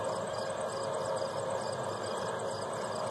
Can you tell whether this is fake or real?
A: real